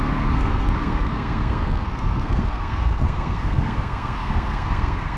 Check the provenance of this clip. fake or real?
fake